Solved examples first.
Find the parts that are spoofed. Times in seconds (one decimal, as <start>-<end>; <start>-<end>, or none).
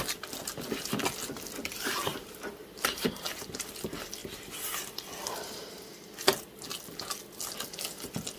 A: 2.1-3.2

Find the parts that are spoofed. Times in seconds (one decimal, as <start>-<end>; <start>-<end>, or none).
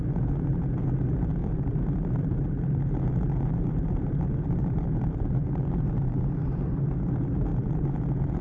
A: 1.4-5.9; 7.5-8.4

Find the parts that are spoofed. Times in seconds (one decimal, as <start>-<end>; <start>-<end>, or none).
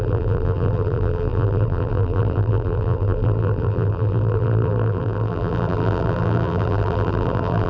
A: 0.0-7.7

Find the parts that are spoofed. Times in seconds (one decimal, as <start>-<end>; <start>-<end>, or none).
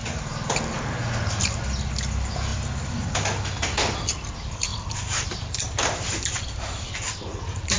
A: 0.0-1.6; 4.7-7.8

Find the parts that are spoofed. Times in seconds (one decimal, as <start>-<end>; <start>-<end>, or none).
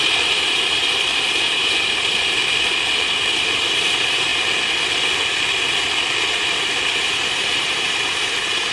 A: 0.0-2.4; 3.4-4.3; 6.3-8.7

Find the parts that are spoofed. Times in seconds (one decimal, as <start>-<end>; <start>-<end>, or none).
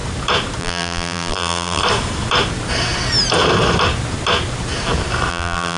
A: 0.6-1.8; 5.3-5.8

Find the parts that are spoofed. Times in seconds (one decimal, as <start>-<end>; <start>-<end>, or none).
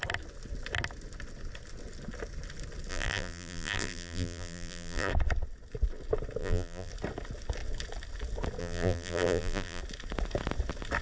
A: 2.9-5.1; 6.4-6.9; 8.6-9.8